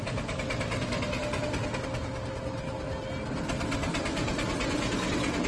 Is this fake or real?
real